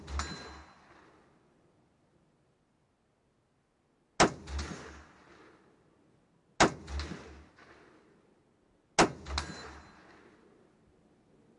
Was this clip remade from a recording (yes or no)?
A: no